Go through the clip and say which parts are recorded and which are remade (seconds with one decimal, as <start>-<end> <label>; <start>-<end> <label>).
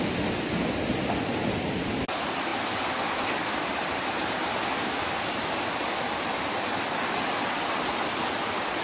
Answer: 0.0-2.5 recorded; 2.5-6.9 remade; 6.9-8.8 recorded